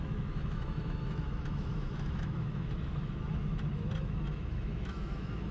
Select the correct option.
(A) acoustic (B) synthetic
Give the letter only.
B